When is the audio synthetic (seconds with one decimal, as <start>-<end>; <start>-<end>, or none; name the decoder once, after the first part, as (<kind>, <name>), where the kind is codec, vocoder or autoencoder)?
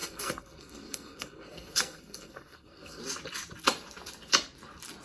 0.0-3.0 (codec, SNAC)